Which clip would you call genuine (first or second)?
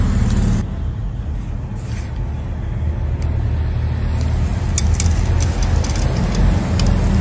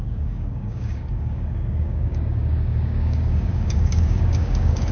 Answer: first